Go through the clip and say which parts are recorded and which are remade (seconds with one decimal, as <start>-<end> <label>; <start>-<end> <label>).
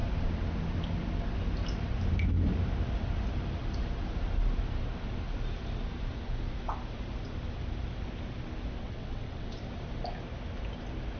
0.0-8.8 recorded; 8.8-9.6 remade; 9.6-11.2 recorded